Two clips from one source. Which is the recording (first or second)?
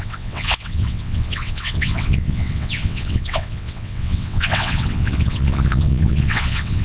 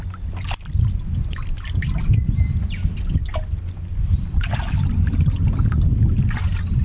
second